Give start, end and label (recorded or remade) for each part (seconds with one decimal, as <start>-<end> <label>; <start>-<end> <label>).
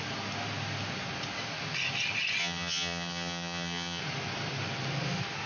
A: 0.0-2.4 recorded; 2.4-4.0 remade; 4.0-5.5 recorded